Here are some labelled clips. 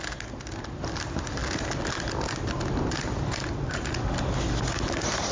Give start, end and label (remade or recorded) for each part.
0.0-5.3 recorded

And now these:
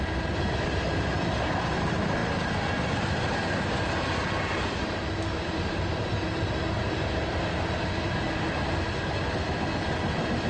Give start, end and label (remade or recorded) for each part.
0.0-10.5 recorded

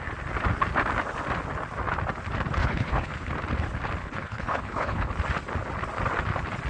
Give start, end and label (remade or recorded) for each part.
0.0-2.6 recorded; 2.6-3.3 remade; 3.3-4.0 recorded; 4.0-5.1 remade; 5.1-6.7 recorded

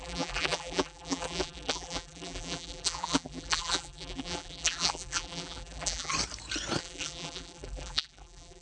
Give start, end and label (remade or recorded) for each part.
0.0-6.1 remade; 6.1-6.8 recorded; 6.8-8.6 remade